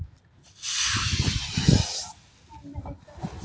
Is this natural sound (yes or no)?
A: yes